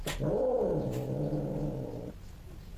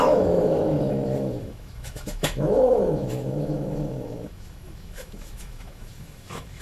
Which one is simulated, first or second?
second